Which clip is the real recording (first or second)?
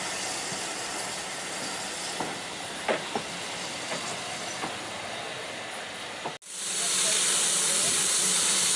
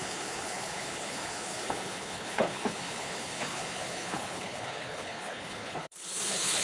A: first